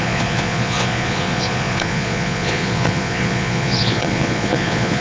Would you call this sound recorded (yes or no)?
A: no